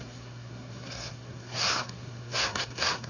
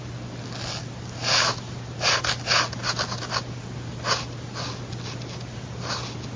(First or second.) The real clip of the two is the second